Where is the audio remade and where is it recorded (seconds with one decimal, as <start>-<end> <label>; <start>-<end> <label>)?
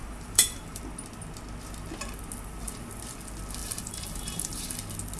0.0-0.8 remade; 0.8-3.6 recorded; 3.6-4.7 remade; 4.7-5.2 recorded